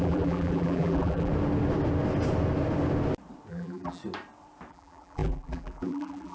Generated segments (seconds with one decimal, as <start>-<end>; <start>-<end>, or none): 0.0-1.3; 3.5-4.0; 4.7-6.3